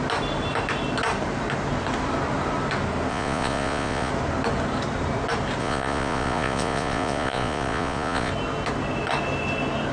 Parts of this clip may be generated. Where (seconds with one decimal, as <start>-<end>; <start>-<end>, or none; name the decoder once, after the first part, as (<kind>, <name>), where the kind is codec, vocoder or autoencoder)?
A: 3.1-4.1 (vocoder, Vocos); 5.6-8.3